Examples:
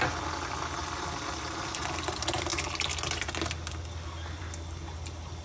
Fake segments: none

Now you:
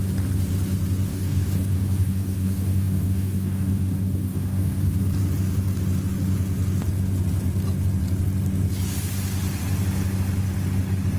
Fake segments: 1.1-5.0 (codec, DAC)